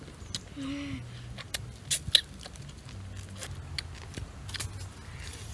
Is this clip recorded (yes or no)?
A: yes